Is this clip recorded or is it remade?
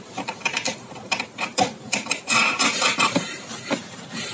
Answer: remade